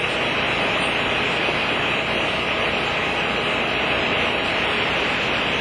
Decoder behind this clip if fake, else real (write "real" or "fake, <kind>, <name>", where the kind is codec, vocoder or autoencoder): real